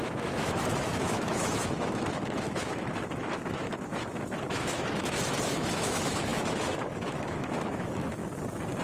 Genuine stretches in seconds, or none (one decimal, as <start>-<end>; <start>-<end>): 8.2-8.8